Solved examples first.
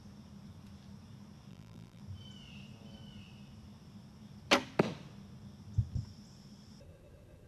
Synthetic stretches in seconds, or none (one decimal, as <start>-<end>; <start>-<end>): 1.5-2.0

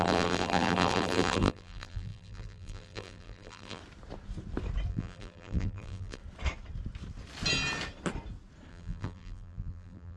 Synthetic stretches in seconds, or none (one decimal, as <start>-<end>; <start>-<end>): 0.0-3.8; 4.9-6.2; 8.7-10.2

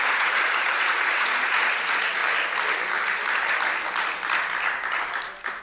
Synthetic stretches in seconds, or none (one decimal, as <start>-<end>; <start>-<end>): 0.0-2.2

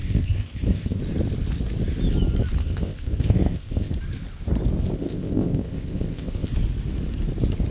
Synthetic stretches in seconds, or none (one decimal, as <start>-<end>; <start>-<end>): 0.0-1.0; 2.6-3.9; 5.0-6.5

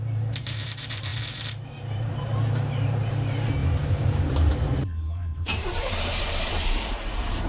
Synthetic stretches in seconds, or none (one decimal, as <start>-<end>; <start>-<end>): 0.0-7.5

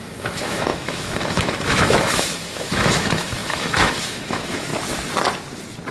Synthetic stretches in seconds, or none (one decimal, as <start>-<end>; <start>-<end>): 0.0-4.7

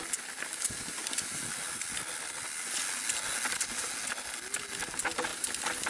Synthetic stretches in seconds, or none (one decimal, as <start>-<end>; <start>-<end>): none

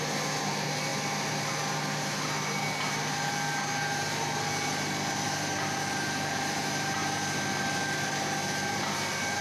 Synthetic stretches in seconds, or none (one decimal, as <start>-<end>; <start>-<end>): none